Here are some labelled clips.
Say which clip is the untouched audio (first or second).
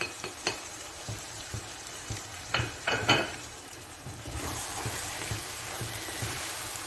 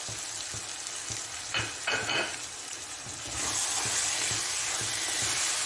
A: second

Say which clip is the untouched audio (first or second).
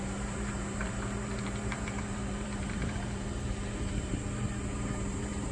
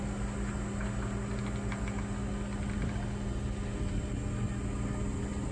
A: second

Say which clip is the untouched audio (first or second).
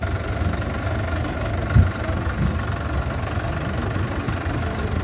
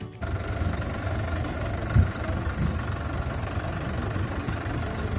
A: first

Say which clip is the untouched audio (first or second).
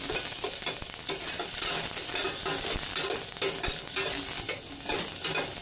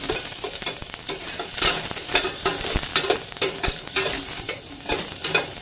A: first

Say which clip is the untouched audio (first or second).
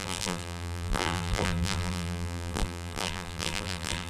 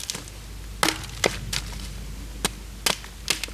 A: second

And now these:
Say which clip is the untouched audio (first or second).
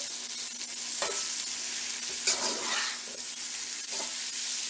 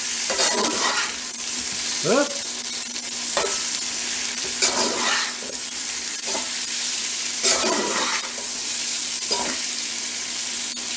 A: first